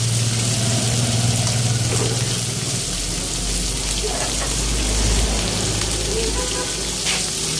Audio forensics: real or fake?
real